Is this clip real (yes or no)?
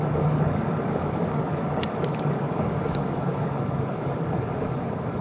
no